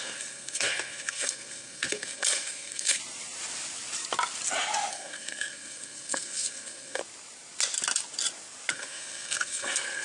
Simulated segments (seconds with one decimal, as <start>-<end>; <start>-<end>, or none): 0.0-3.0; 4.9-7.0; 8.7-10.0